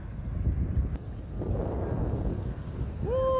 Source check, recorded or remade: recorded